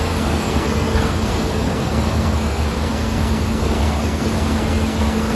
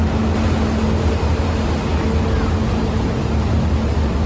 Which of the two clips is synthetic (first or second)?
first